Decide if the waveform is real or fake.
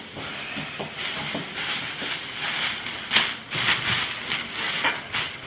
real